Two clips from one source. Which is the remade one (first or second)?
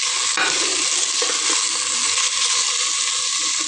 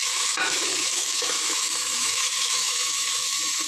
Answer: second